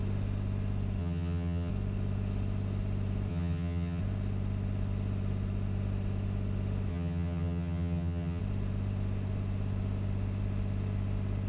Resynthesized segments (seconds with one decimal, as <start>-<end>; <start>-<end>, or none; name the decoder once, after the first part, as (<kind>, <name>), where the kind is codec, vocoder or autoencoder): 1.0-1.7 (vocoder, HiFi-GAN); 3.3-4.0; 6.9-8.4